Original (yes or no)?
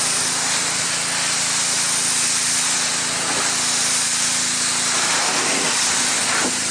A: yes